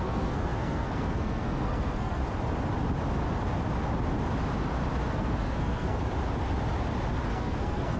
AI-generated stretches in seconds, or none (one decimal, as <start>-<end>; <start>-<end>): 0.0-2.2; 5.1-6.0; 7.3-8.0